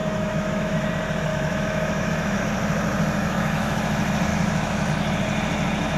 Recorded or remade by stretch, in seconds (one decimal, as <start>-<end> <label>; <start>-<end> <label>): 0.0-0.9 remade; 0.9-1.3 recorded; 1.3-2.4 remade; 2.4-3.2 recorded; 3.2-3.8 remade; 3.8-4.3 recorded; 4.3-4.9 remade; 4.9-6.0 recorded